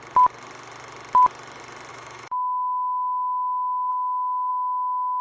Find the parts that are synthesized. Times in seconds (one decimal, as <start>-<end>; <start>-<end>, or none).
1.9-3.9; 4.5-5.2